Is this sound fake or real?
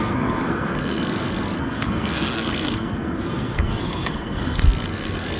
fake